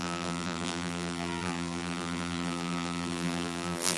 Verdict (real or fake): fake